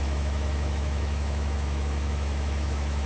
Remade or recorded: remade